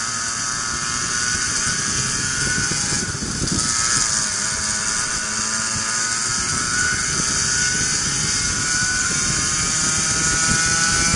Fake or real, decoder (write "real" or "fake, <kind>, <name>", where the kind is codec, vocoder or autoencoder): real